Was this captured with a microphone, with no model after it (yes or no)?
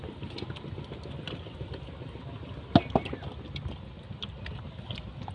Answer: yes